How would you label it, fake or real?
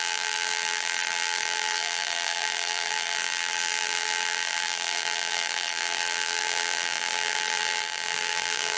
fake